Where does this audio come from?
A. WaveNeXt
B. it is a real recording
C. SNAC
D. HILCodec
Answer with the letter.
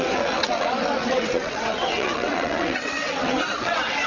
A